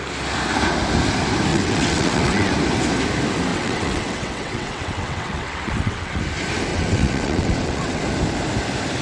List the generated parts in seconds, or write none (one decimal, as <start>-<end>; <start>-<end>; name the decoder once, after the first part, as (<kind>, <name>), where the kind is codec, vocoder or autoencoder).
1.5-2.5 (vocoder, WaveNeXt); 3.5-6.2; 6.7-8.0